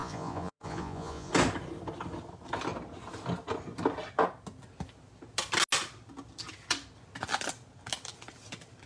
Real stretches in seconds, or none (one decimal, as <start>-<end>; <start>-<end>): 1.3-8.9